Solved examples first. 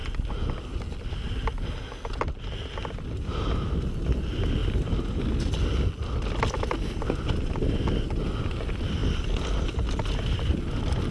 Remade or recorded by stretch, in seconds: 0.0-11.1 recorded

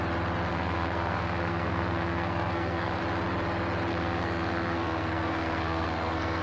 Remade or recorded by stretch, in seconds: 0.0-0.5 recorded; 0.5-3.0 remade; 3.0-3.9 recorded; 3.9-6.4 remade

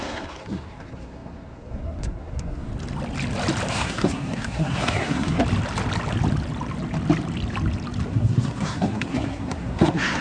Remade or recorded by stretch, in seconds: 0.0-2.7 remade; 2.7-3.7 recorded; 3.7-5.4 remade; 5.4-8.1 recorded; 8.1-10.2 remade

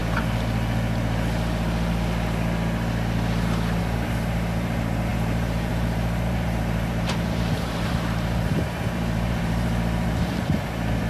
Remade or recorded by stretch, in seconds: 0.0-3.8 recorded; 3.8-11.1 remade

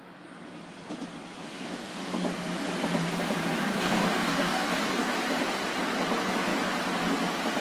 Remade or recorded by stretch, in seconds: 0.0-1.4 recorded; 1.4-2.1 remade; 2.1-3.7 recorded; 3.7-5.1 remade; 5.1-7.6 recorded

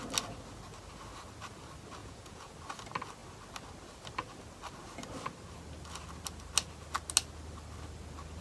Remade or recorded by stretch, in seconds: 0.0-2.0 recorded; 2.0-2.5 remade; 2.5-8.4 recorded

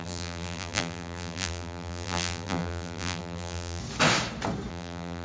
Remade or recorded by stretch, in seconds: 0.0-3.8 remade; 3.8-4.7 recorded; 4.7-5.2 remade